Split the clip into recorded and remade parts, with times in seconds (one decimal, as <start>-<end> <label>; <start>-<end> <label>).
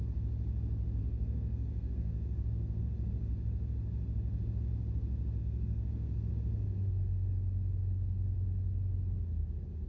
0.0-1.0 recorded; 1.0-2.8 remade; 2.8-5.4 recorded; 5.4-6.3 remade; 6.3-9.9 recorded